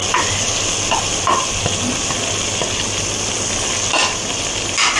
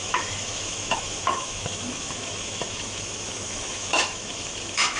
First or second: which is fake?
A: second